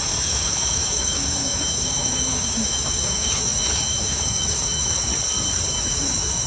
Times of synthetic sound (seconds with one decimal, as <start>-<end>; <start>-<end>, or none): 0.0-5.1; 5.7-6.5